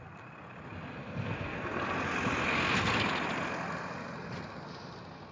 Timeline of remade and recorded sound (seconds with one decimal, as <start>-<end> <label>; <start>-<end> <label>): 0.0-1.0 recorded; 1.0-1.8 remade; 1.8-5.3 recorded

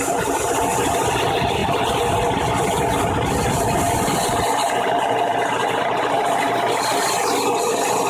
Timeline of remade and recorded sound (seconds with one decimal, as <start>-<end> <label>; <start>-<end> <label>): 0.0-4.6 recorded; 4.6-6.5 remade; 6.5-8.1 recorded

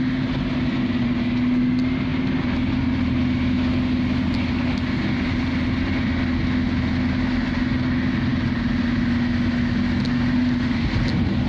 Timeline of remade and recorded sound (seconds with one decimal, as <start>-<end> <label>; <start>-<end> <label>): 0.0-11.5 recorded

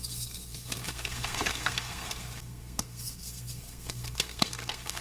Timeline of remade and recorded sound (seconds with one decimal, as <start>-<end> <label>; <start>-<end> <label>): 0.0-5.0 remade

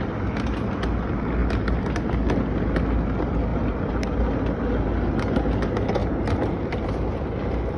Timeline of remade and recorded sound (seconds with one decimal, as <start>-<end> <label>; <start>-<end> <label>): 0.0-3.5 recorded; 3.5-4.2 remade; 4.2-6.0 recorded; 6.0-7.1 remade; 7.1-7.8 recorded

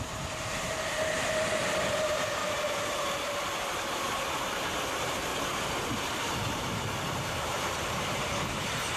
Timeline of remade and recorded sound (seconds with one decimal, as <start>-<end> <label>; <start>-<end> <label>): 0.0-2.4 remade; 2.4-4.8 recorded; 4.8-5.3 remade; 5.3-6.3 recorded; 6.3-9.0 remade

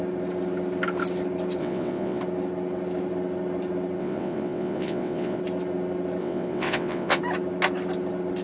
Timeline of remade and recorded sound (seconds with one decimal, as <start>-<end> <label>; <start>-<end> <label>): 0.0-1.6 recorded; 1.6-2.2 remade; 2.2-4.0 recorded; 4.0-5.4 remade; 5.4-6.2 recorded; 6.2-7.2 remade; 7.2-8.4 recorded